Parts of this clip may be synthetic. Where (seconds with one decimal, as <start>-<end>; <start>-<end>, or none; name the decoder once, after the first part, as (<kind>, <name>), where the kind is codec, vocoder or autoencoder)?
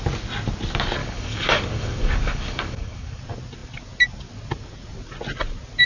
1.0-3.2 (codec, DAC)